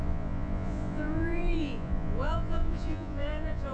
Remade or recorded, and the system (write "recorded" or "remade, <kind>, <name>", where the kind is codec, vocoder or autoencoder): remade, vocoder, Vocos